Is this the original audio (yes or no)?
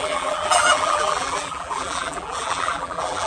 no